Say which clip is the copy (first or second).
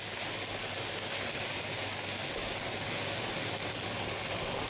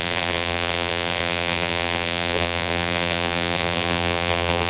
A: second